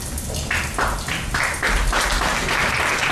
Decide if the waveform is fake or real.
real